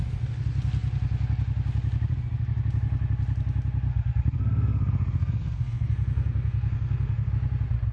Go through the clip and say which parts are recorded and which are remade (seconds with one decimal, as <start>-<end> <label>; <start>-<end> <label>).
0.0-3.9 recorded; 3.9-7.3 remade; 7.3-7.9 recorded